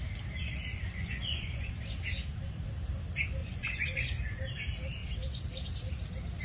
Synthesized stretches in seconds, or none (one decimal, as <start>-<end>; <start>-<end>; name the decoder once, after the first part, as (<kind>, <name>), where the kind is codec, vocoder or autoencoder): 0.7-1.7 (vocoder, Vocos); 3.4-4.4